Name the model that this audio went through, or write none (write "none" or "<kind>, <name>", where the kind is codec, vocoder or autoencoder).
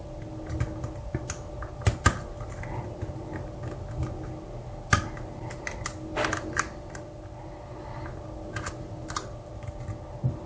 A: none